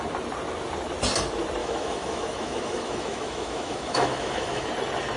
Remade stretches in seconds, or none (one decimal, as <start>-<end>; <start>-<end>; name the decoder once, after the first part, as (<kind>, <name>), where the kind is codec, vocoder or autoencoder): 1.6-4.7 (autoencoder, DAC-VAE)